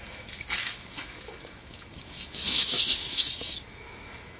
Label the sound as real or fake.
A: fake